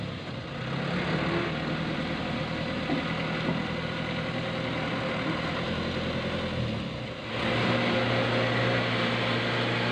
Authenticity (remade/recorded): recorded